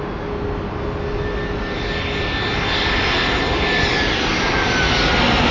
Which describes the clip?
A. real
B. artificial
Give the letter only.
A